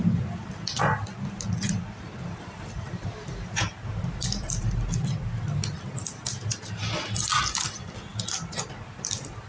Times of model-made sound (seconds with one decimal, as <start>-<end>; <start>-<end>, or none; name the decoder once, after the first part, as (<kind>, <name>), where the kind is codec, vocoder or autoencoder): none